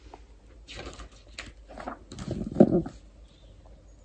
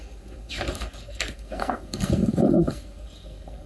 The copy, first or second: second